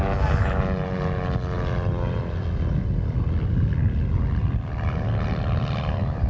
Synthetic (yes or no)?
no